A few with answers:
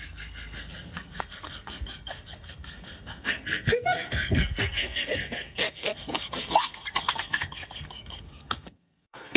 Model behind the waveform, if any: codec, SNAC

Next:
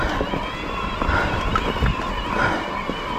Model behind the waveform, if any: none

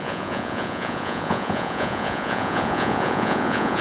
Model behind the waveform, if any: vocoder, Vocos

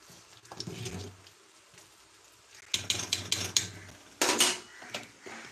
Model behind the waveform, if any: none